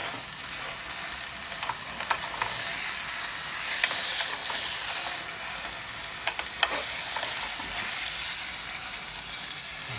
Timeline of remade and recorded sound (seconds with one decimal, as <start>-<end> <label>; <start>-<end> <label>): 0.0-10.0 recorded